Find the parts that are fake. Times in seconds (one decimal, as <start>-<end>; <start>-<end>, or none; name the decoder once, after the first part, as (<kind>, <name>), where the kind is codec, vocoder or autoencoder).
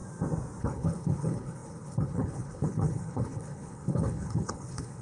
0.6-5.0 (codec, HILCodec)